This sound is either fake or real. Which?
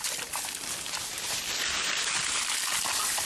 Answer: real